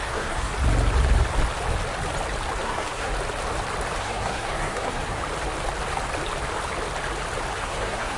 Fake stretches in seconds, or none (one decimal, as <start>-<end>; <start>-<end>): 0.0-0.5; 2.6-3.1; 4.0-5.2; 7.6-8.2